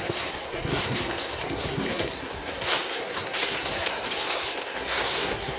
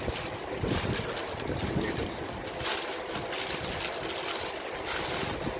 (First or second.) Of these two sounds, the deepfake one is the first